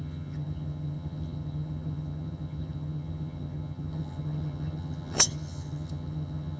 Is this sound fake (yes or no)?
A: yes